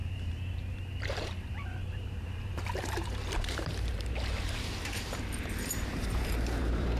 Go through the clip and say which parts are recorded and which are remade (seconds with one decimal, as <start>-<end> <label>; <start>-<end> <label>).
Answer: 0.0-7.0 remade